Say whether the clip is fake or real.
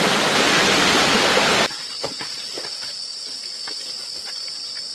real